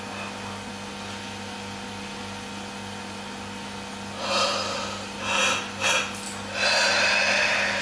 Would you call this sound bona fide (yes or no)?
yes